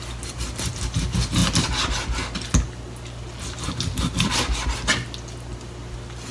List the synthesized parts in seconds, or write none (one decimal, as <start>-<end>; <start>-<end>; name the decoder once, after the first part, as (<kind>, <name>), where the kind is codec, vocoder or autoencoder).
none